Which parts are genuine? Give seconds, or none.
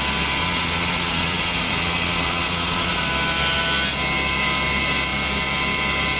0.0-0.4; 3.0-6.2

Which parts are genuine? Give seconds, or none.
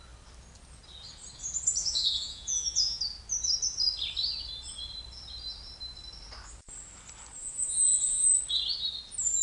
0.0-1.8; 3.0-7.4; 8.3-9.4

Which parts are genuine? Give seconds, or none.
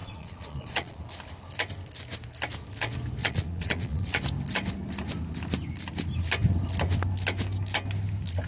1.0-3.2; 4.2-8.5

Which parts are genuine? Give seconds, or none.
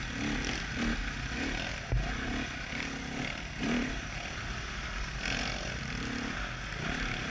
0.0-7.3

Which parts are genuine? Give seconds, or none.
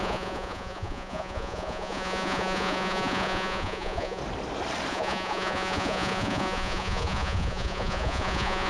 4.2-4.9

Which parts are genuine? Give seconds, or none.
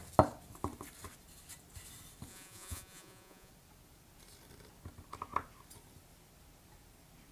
0.0-2.3; 3.5-7.3